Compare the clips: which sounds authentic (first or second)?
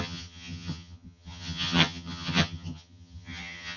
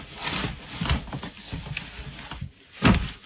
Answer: second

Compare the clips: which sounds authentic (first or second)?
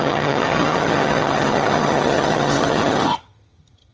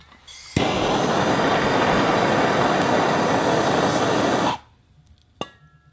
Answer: second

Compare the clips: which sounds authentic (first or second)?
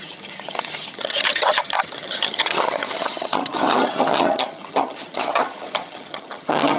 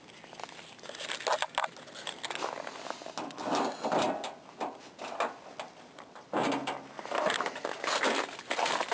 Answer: second